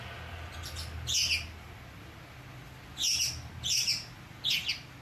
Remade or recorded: recorded